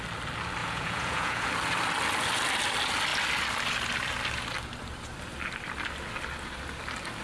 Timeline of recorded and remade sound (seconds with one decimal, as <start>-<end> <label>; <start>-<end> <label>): 0.0-0.6 recorded; 0.6-1.5 remade; 1.5-7.2 recorded